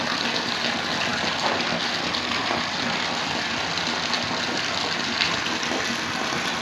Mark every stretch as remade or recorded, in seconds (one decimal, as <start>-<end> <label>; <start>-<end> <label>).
0.0-6.6 recorded